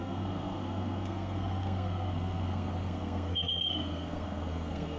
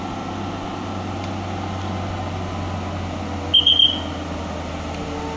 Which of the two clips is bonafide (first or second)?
second